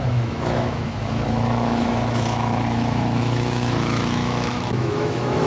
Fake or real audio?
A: fake